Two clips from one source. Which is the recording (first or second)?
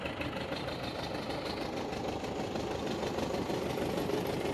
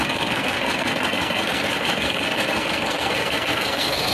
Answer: first